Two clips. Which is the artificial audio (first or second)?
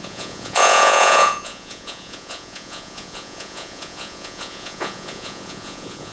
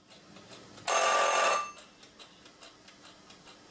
first